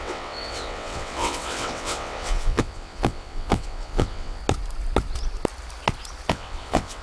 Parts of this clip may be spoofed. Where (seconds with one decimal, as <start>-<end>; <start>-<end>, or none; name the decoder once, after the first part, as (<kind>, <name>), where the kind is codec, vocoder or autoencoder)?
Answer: 0.0-4.4 (vocoder, WaveNeXt); 6.3-7.0